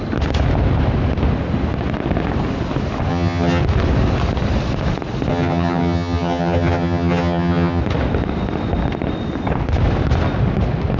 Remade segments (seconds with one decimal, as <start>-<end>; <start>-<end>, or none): 3.1-3.6; 5.3-7.8